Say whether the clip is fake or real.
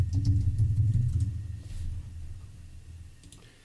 real